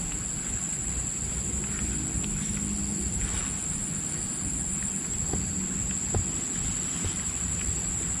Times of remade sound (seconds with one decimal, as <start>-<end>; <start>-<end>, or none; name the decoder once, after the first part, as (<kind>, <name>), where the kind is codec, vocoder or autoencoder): none